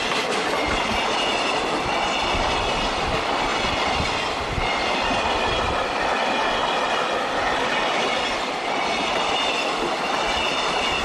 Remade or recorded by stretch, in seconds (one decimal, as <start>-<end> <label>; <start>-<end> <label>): 0.0-11.0 recorded